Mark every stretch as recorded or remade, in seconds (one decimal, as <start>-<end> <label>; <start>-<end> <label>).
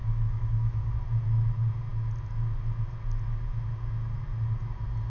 0.0-0.9 remade; 0.9-5.1 recorded